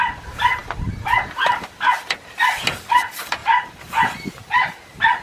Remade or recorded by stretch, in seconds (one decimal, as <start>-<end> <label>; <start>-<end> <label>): 0.0-5.2 remade